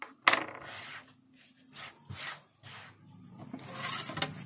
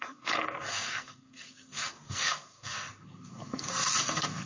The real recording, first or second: first